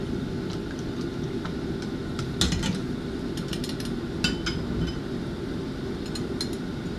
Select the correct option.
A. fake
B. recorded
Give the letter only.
B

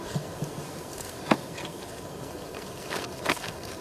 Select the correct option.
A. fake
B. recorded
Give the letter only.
A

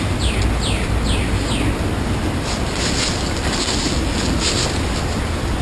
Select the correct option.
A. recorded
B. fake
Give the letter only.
A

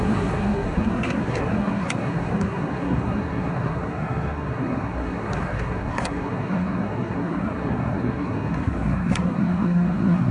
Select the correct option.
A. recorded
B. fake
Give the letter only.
B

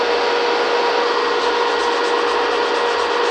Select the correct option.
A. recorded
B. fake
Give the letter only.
A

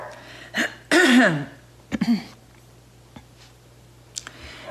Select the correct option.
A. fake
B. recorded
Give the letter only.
B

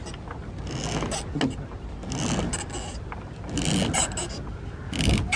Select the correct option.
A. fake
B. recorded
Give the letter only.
B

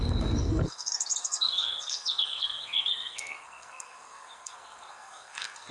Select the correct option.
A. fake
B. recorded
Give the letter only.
A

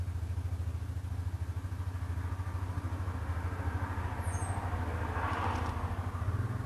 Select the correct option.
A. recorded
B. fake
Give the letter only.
A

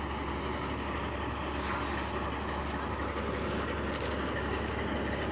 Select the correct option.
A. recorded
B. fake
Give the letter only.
A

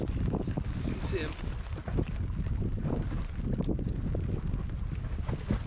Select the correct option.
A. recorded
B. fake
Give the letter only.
A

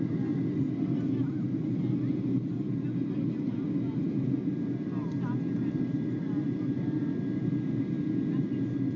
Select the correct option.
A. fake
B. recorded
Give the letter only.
B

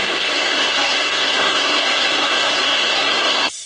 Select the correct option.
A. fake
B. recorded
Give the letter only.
A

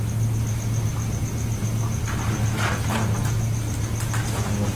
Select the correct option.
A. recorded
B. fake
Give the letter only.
A